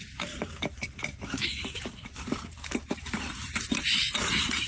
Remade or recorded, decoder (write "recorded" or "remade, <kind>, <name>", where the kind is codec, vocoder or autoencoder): remade, vocoder, BigVGAN v2